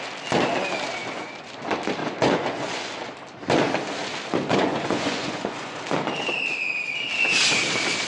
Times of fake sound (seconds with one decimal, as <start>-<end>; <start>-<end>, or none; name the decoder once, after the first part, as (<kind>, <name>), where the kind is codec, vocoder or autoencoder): 1.0-1.5 (vocoder, Vocos); 2.0-2.9; 4.5-5.8